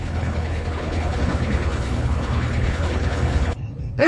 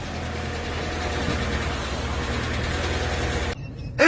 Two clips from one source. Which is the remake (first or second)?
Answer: first